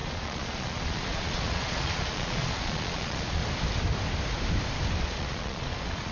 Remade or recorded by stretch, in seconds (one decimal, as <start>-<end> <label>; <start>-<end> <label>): 0.0-3.4 remade; 3.4-5.0 recorded; 5.0-6.1 remade